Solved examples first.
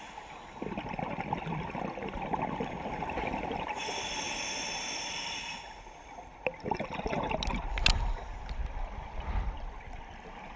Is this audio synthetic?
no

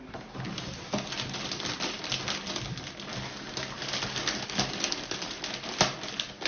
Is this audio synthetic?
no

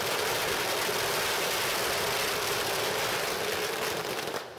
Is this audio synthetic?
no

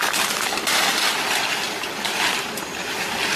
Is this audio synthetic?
no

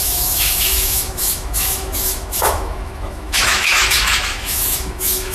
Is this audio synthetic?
yes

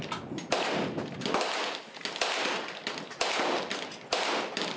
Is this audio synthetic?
no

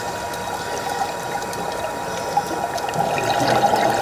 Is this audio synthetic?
no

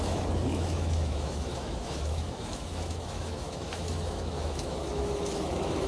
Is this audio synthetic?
yes